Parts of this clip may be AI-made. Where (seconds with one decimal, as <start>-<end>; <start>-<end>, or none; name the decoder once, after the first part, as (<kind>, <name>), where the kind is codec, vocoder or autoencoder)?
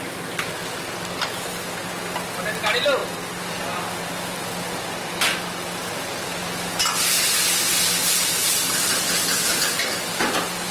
none